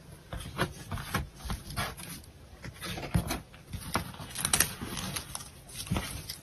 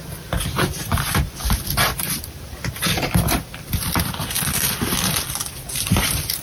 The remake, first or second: second